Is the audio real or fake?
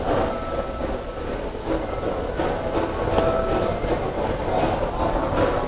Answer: real